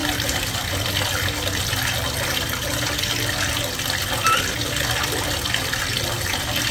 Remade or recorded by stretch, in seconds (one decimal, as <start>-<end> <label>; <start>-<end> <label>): 0.0-6.7 recorded